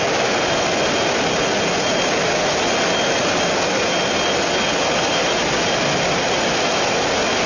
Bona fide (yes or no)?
yes